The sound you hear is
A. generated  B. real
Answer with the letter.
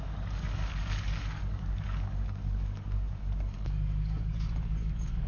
A